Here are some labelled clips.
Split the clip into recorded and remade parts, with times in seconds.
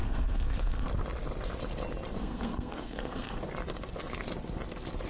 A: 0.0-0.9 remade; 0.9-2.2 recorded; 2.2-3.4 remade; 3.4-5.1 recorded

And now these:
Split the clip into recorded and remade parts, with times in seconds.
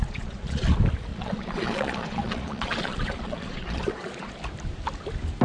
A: 0.0-0.6 remade; 0.6-1.1 recorded; 1.1-4.3 remade; 4.3-5.4 recorded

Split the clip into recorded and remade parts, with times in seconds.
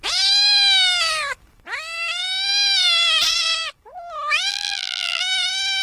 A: 0.0-4.5 recorded; 4.5-5.2 remade; 5.2-5.8 recorded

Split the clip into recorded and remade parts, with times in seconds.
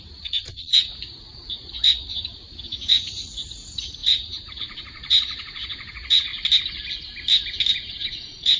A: 0.0-6.3 remade; 6.3-7.7 recorded; 7.7-8.6 remade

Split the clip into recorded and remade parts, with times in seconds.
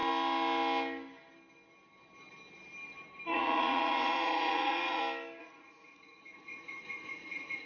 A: 0.0-3.3 recorded; 3.3-5.0 remade; 5.0-5.4 recorded; 5.4-7.7 remade